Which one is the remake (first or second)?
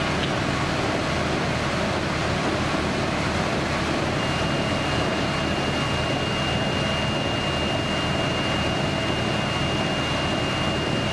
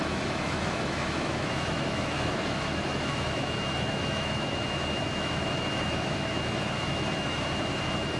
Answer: second